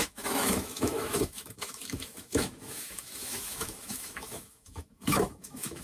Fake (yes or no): yes